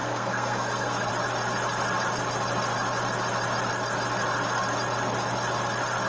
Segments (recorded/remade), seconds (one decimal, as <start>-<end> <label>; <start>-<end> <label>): 0.0-1.1 remade; 1.1-6.1 recorded